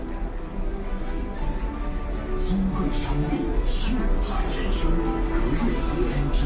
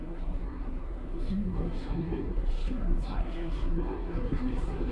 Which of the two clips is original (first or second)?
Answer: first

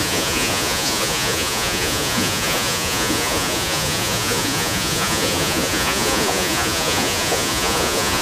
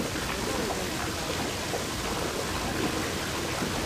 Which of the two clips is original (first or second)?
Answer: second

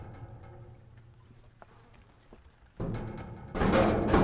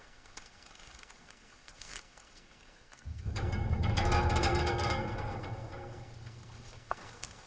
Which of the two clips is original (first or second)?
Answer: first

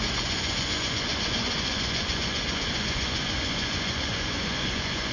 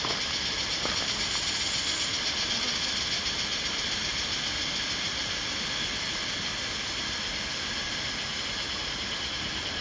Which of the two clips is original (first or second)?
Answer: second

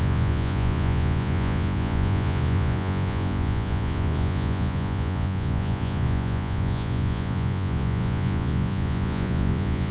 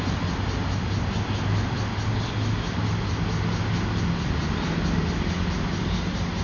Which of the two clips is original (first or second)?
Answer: second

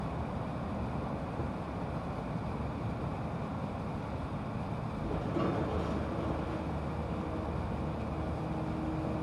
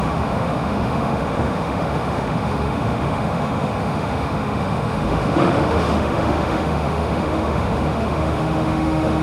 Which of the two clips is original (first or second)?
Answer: first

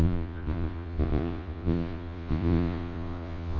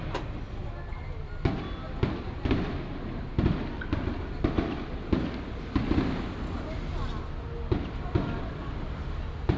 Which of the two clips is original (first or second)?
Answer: second